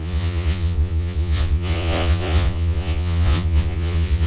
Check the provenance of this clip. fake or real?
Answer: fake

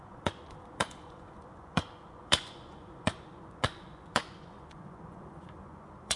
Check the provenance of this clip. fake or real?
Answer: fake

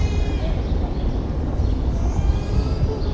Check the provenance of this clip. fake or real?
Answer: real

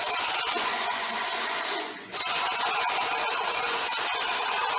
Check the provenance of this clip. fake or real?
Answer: fake